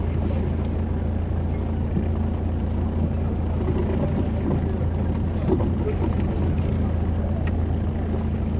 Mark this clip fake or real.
real